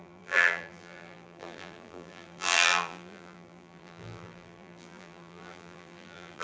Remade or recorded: remade